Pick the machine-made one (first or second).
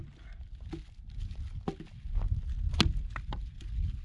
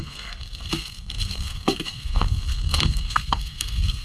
second